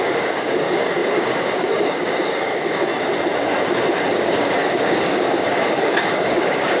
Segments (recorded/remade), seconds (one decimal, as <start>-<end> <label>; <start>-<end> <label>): 0.0-2.9 remade; 2.9-4.1 recorded; 4.1-6.8 remade